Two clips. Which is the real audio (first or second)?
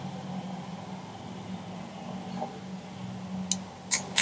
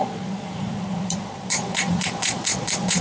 first